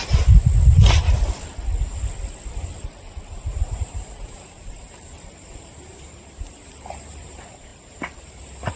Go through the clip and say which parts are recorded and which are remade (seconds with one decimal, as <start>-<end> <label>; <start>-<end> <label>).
0.0-3.3 recorded; 3.3-8.8 remade